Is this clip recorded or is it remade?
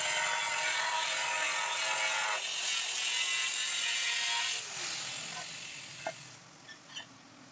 recorded